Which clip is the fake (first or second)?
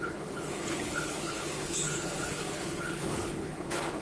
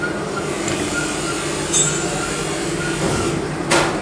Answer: first